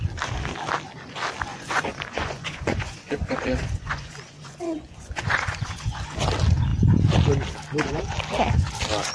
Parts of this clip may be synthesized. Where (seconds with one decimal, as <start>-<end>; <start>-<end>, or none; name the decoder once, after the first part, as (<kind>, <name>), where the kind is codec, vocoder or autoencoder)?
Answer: 1.5-6.2 (vocoder, Vocos)